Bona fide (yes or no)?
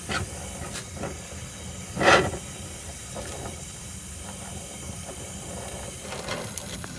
no